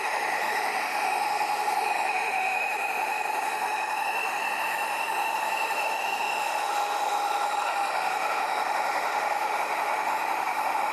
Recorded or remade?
remade